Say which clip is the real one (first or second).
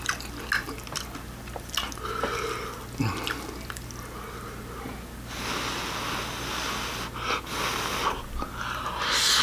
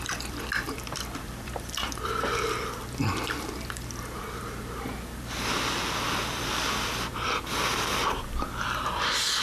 first